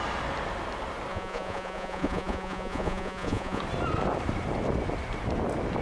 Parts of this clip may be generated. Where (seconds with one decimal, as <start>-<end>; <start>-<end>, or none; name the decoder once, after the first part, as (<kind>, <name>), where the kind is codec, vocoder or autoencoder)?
1.1-3.6 (vocoder, Vocos)

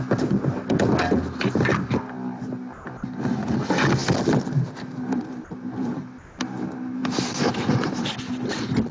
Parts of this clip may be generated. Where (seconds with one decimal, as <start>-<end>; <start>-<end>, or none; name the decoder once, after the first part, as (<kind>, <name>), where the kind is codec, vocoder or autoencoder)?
none

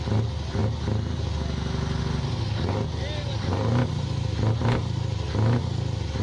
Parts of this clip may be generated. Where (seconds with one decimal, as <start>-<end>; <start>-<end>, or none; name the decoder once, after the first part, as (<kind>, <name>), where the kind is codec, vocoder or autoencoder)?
none

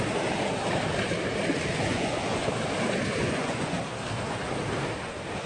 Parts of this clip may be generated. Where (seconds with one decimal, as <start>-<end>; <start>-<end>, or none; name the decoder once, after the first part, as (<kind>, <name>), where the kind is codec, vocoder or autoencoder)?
1.9-2.5 (vocoder, Vocos); 3.2-3.8